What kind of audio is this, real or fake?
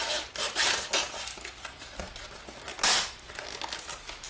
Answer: real